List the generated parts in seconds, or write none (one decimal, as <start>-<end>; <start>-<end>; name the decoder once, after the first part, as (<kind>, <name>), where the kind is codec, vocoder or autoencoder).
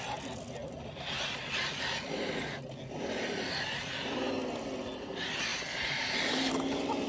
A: none